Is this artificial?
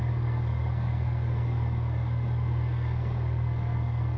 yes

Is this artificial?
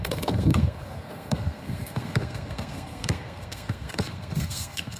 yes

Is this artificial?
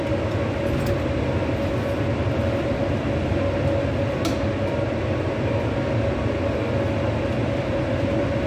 no